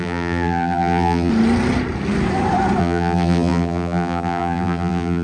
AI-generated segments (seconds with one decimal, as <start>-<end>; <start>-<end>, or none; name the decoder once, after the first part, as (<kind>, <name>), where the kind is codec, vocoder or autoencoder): 0.0-1.3 (vocoder, BigVGAN v2); 2.8-5.2